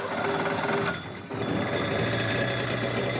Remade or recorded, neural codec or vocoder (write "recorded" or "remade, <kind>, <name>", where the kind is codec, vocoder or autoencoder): recorded